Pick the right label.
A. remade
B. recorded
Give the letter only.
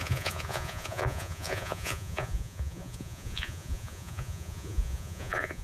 A